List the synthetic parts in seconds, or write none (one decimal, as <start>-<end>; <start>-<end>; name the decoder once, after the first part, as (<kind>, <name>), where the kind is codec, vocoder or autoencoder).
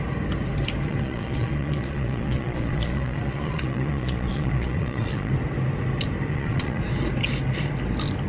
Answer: 0.9-5.3 (vocoder, Vocos); 6.3-6.8